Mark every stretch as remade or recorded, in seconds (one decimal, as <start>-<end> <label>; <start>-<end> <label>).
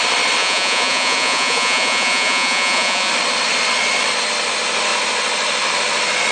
0.0-0.4 recorded; 0.4-3.1 remade; 3.1-6.3 recorded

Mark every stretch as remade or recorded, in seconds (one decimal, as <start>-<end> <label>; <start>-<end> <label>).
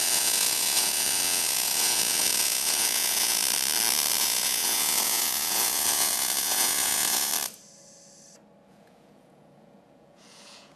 0.0-3.4 remade; 3.4-4.2 recorded; 4.2-7.3 remade; 7.3-8.7 recorded; 8.7-10.8 remade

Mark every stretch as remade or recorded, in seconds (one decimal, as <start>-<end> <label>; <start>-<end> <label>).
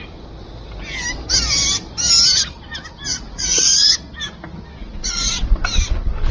0.0-3.1 recorded; 3.1-3.9 remade; 3.9-4.8 recorded; 4.8-5.3 remade; 5.3-6.3 recorded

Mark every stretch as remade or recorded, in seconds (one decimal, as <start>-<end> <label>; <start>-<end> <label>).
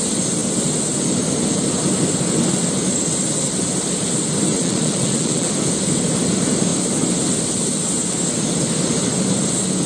0.0-4.5 recorded; 4.5-5.5 remade; 5.5-9.9 recorded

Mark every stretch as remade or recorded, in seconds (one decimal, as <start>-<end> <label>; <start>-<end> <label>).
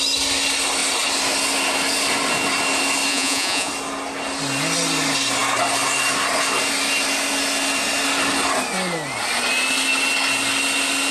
0.0-3.1 recorded; 3.1-3.7 remade; 3.7-11.1 recorded